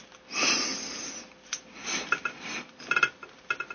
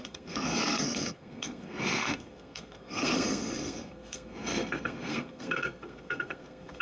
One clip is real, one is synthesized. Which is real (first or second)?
first